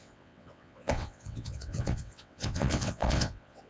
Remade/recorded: remade